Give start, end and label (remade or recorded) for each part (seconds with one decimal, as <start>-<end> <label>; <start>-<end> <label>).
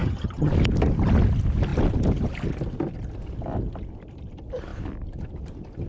0.0-0.5 remade; 0.5-5.9 recorded